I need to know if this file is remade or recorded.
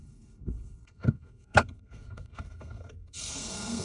remade